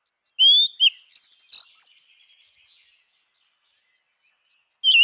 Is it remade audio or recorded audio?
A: recorded